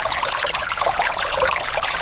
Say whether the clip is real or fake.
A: fake